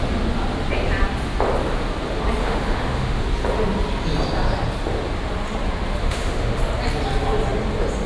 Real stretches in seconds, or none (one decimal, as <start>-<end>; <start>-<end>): 0.0-2.4; 3.2-6.0; 6.6-8.1